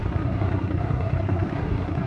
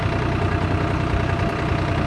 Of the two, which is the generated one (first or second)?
first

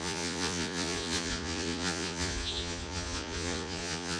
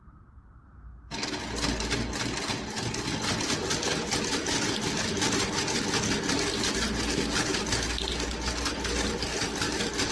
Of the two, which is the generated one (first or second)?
first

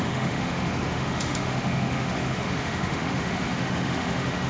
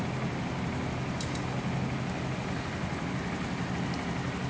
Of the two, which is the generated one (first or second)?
first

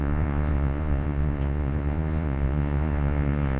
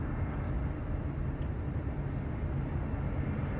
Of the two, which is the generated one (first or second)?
first